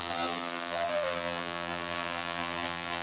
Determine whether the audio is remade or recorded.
remade